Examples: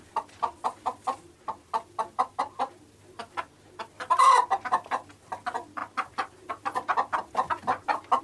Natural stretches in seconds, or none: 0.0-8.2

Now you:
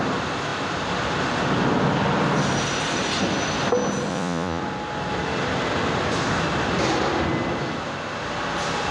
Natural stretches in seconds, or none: 0.0-4.1; 4.6-8.9

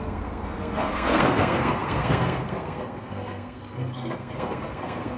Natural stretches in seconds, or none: none

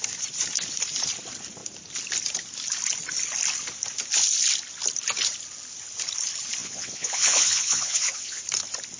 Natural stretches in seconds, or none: 0.0-6.6; 8.4-9.0

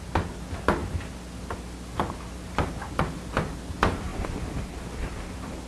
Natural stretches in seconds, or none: 0.0-5.7